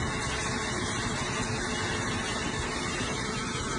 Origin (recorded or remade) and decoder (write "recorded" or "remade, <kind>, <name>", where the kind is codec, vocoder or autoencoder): recorded